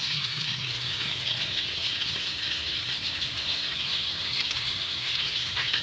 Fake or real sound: fake